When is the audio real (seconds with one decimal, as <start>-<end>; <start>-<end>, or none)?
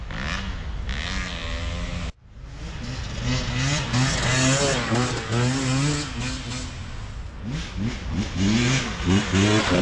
0.0-9.8